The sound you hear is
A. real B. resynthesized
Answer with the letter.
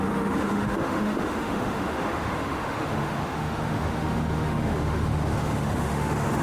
B